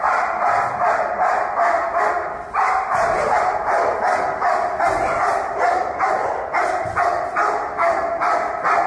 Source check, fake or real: real